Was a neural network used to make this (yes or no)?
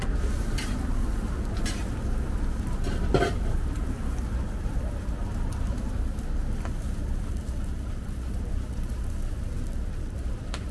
no